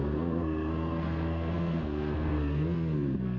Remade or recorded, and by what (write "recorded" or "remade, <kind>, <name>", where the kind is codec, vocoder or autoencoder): remade, codec, SNAC